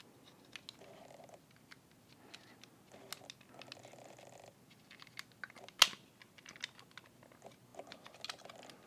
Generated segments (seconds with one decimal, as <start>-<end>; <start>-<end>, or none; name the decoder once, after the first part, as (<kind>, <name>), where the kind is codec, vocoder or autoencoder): none